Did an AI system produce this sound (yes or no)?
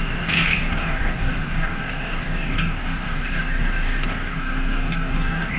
yes